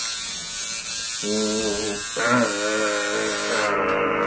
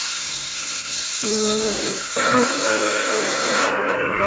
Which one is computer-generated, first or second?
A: second